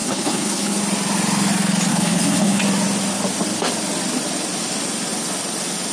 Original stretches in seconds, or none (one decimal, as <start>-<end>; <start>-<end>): 0.8-1.9; 2.6-5.9